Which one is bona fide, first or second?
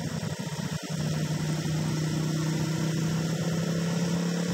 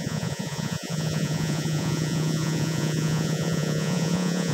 first